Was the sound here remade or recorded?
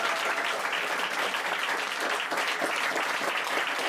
remade